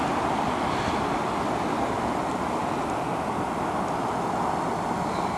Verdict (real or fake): real